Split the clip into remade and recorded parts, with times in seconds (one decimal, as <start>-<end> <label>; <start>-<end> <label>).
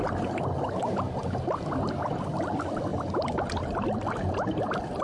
0.0-5.0 recorded